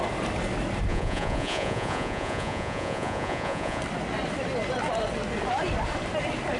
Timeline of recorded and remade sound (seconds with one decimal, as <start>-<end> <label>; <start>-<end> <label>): 0.0-0.9 recorded; 0.9-3.8 remade; 3.8-6.6 recorded